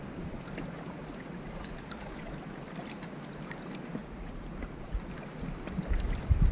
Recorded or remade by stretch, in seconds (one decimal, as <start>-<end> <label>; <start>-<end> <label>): 0.0-1.0 recorded; 1.0-2.3 remade; 2.3-4.0 recorded; 4.0-5.1 remade; 5.1-6.5 recorded